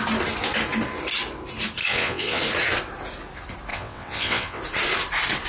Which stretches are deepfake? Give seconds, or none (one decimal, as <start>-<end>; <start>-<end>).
1.8-2.4; 3.7-4.6